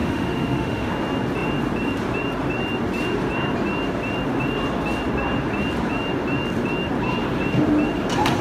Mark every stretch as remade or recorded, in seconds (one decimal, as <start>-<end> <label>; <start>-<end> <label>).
0.0-0.9 remade; 0.9-8.4 recorded